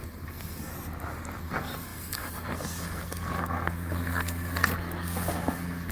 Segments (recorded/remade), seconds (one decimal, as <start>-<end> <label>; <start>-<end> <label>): 0.0-0.7 remade; 0.7-1.4 recorded; 1.4-5.9 remade